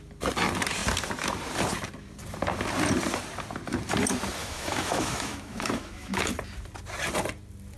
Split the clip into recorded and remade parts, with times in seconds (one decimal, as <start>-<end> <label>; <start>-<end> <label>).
0.0-4.4 recorded; 4.4-6.3 remade; 6.3-7.8 recorded